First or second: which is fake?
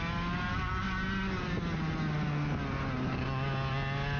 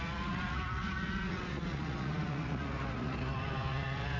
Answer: second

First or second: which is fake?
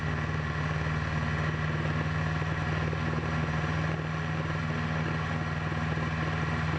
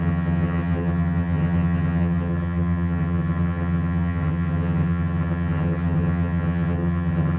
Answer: second